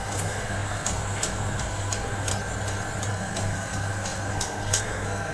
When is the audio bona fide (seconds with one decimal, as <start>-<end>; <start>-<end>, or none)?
2.3-3.1